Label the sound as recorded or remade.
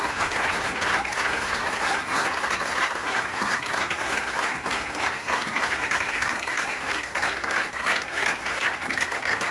remade